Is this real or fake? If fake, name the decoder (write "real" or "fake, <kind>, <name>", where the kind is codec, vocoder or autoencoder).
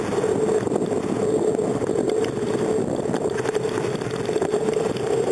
real